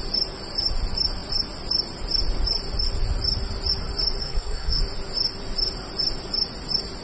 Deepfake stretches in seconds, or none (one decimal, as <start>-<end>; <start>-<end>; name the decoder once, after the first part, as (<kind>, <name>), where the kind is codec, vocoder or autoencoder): 4.2-4.8 (codec, SNAC)